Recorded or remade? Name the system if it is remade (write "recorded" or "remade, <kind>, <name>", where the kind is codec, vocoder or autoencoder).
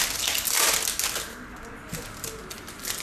recorded